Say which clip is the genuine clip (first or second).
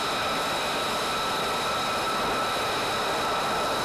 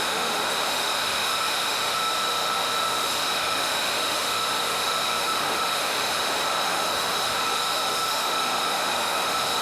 first